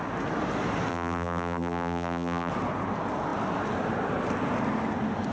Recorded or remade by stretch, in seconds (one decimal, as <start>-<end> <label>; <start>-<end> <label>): 0.0-0.9 recorded; 0.9-2.5 remade; 2.5-5.3 recorded